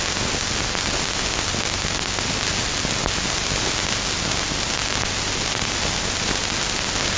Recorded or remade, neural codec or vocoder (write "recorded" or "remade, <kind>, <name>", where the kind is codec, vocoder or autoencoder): recorded